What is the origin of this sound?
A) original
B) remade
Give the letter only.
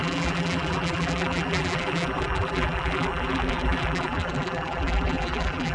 B